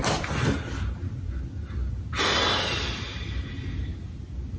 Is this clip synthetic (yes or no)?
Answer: no